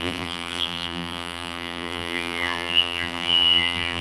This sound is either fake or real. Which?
fake